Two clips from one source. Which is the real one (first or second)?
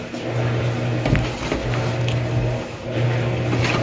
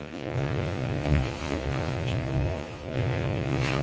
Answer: first